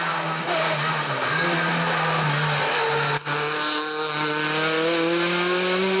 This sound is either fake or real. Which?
real